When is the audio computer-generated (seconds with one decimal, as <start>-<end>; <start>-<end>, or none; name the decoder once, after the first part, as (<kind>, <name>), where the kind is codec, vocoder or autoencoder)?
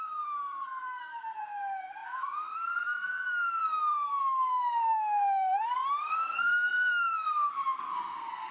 0.0-8.5 (codec, SNAC)